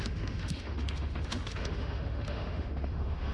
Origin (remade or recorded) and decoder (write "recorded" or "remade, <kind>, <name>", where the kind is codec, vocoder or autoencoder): remade, autoencoder, DAC-VAE